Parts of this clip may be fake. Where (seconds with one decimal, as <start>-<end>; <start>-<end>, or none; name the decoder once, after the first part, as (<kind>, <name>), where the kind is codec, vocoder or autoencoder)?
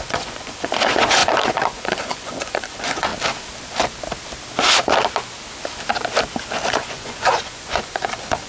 0.0-3.1 (vocoder, Vocos); 6.7-8.5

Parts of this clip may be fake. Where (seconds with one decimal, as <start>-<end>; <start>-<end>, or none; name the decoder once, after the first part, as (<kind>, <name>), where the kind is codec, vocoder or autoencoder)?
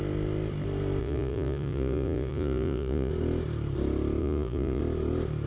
1.0-3.1 (vocoder, Vocos); 4.2-4.8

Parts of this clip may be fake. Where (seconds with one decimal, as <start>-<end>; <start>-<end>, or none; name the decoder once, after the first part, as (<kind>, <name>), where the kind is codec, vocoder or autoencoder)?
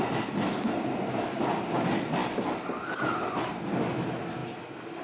none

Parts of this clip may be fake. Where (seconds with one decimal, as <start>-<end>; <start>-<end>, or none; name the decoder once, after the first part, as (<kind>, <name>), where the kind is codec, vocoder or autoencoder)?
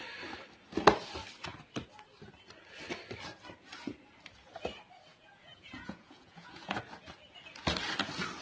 5.1-6.8 (vocoder, Vocos)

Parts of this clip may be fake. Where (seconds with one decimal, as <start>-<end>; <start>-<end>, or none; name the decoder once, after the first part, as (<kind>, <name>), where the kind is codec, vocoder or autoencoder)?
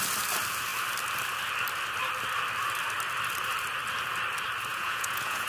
4.7-5.5 (vocoder, Vocos)